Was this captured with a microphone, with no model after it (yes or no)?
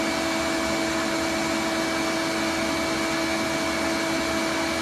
yes